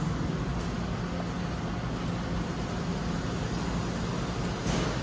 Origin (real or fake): real